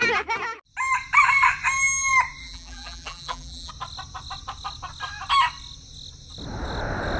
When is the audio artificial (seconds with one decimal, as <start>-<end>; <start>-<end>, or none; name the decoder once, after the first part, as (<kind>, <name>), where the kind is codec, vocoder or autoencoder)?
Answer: 2.4-3.7 (vocoder, BigVGAN v2)